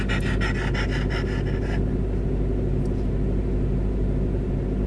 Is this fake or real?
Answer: real